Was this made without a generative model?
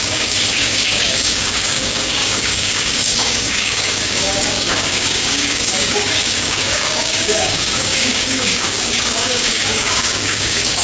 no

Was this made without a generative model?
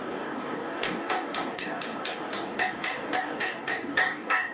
no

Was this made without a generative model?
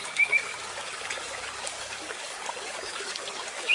no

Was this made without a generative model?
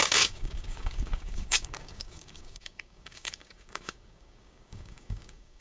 no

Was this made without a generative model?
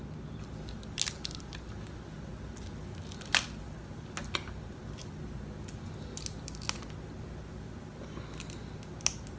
yes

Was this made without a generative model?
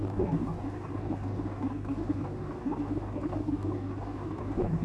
no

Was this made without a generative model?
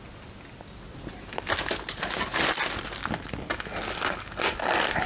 yes